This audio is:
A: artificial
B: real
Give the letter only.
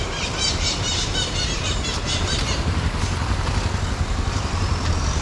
A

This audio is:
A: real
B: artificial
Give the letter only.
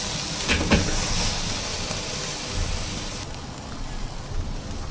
A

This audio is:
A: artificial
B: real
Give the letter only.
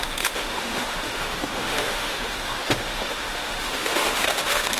A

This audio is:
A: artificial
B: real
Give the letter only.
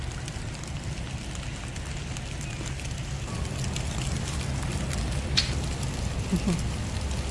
B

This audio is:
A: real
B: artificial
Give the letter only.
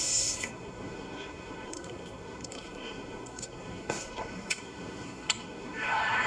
B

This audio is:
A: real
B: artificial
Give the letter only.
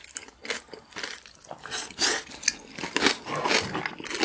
A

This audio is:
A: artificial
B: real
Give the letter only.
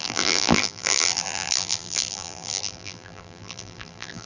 A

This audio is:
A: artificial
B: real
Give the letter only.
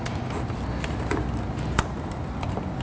B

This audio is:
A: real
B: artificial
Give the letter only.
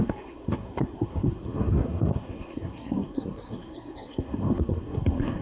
B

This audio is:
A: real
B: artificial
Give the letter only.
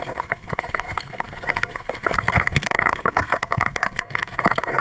B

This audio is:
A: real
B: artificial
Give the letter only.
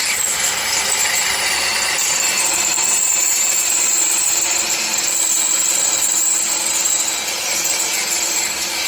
B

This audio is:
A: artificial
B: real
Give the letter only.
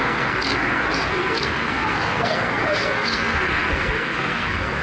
A